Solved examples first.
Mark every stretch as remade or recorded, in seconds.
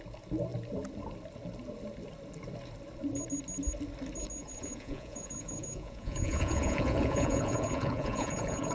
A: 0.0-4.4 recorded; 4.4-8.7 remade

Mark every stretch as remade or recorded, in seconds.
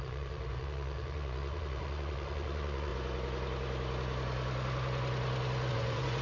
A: 0.0-2.9 remade; 2.9-5.7 recorded; 5.7-6.2 remade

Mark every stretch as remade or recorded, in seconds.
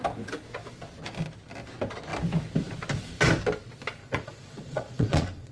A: 0.0-4.0 recorded; 4.0-5.5 remade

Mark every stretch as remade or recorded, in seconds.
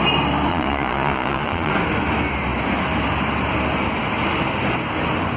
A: 0.0-0.5 recorded; 0.5-1.7 remade; 1.7-5.4 recorded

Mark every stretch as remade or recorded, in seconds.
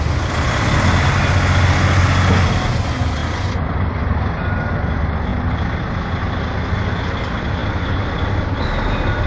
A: 0.0-9.3 recorded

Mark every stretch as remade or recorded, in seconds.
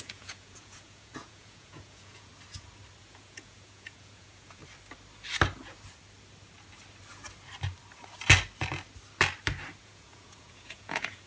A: 0.0-2.3 remade; 2.3-3.0 recorded; 3.0-4.6 remade; 4.6-9.8 recorded; 9.8-11.3 remade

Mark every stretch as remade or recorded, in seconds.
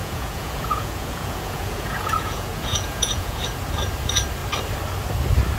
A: 0.0-3.4 remade; 3.4-5.6 recorded